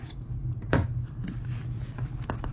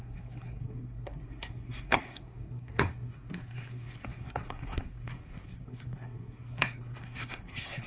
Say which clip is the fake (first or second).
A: second